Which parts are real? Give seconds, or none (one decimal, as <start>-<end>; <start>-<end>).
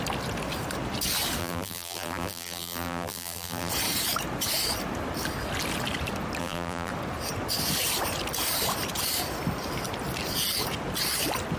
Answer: 0.0-1.4; 3.7-6.4; 6.9-11.6